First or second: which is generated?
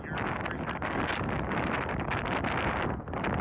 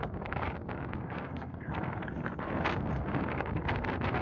second